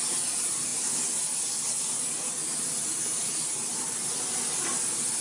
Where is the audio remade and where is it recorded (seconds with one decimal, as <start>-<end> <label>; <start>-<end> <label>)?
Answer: 0.0-5.2 recorded